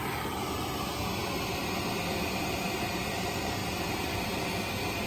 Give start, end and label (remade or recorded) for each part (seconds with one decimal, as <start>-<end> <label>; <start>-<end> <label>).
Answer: 0.0-5.1 recorded